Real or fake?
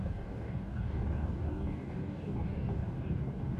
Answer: fake